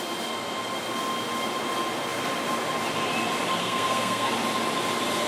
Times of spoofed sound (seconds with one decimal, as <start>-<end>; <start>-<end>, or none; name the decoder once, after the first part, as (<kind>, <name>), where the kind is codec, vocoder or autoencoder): 3.6-4.3 (codec, SNAC)